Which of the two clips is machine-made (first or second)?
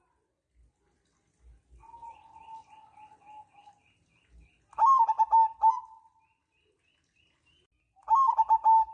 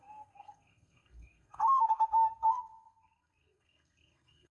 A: second